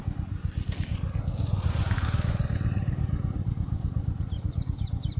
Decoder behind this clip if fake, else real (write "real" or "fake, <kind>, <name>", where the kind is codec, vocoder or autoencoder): real